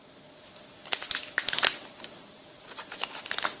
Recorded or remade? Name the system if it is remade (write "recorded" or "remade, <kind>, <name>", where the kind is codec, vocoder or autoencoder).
recorded